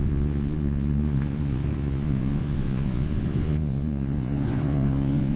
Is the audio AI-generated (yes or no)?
yes